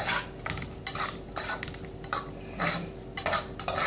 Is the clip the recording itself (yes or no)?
yes